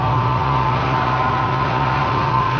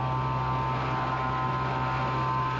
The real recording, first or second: second